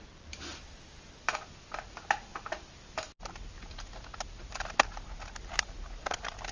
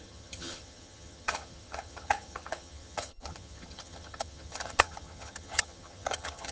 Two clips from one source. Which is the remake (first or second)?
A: second